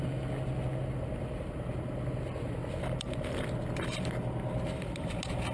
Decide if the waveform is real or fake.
real